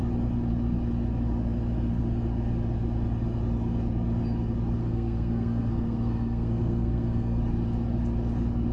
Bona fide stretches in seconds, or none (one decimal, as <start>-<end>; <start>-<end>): 0.0-4.8; 7.4-8.7